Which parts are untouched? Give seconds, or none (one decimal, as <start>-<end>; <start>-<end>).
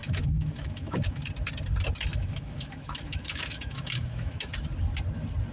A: 1.2-2.1; 4.5-5.5